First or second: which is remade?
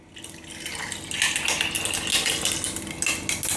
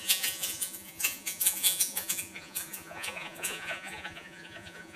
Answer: second